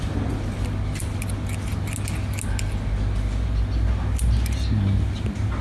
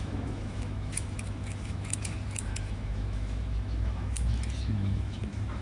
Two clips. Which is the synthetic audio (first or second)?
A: second